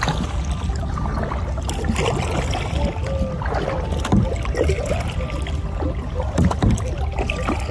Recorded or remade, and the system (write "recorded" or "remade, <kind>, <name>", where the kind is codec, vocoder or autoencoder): recorded